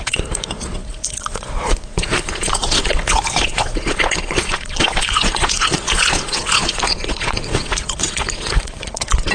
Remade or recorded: remade